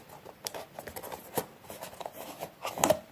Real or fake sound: real